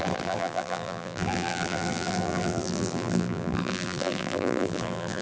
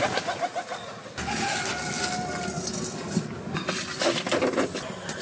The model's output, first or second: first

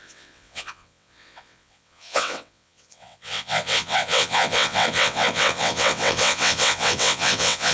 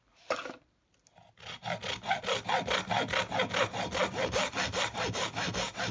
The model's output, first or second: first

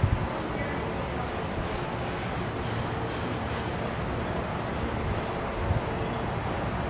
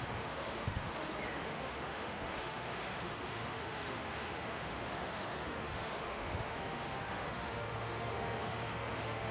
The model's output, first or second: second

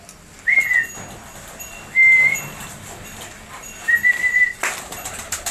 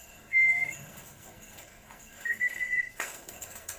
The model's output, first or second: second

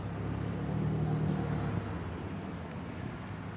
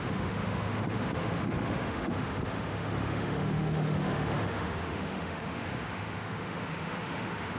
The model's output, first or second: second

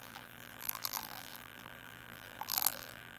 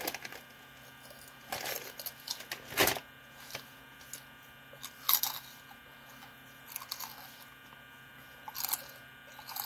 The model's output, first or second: first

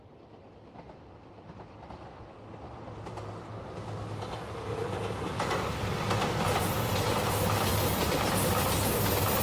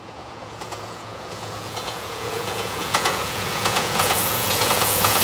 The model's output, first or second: second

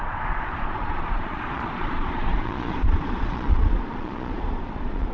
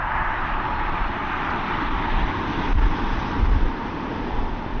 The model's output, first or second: first